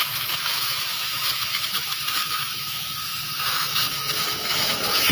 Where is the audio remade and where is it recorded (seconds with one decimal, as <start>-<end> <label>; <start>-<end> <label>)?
0.0-5.1 remade